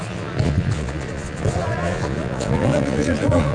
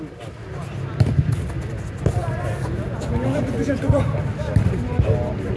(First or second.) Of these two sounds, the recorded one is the second